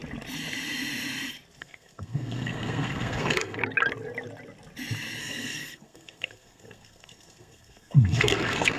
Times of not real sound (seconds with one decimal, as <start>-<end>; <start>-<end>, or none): 1.6-3.6; 5.2-8.8